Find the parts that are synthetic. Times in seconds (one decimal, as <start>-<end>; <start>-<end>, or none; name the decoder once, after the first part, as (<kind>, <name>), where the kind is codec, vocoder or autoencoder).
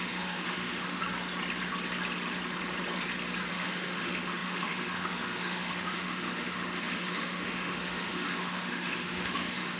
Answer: 0.0-1.0 (autoencoder, DAC-VAE); 3.5-9.8